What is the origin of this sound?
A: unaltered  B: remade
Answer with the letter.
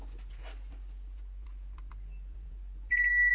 A